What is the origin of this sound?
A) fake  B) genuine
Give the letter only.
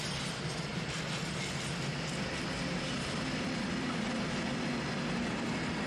B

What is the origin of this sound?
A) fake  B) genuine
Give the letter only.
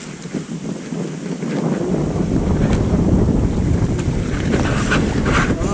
B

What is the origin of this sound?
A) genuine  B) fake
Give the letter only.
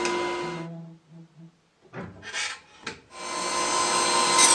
A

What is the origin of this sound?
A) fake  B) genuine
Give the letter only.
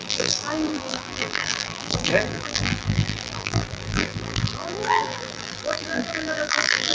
A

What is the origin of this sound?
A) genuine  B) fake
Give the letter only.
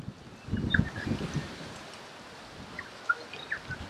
A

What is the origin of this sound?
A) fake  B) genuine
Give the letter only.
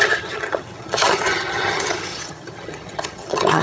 A